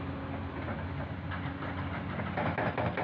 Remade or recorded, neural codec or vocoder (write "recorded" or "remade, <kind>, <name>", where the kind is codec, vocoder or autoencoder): recorded